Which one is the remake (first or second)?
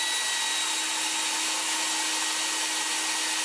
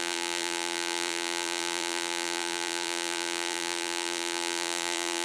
second